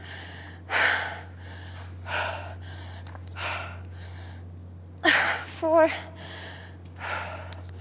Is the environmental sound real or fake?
real